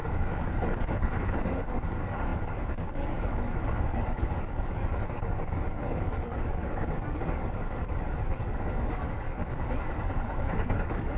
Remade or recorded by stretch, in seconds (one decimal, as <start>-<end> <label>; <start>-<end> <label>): 0.0-11.2 remade